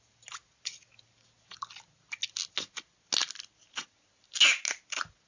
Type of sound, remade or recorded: recorded